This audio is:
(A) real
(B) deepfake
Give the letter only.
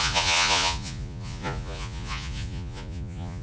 B